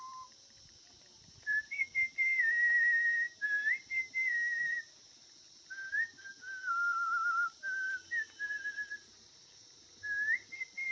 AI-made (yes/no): yes